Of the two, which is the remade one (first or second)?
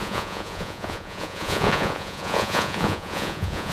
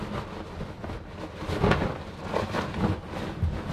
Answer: first